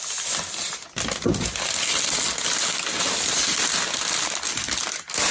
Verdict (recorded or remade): recorded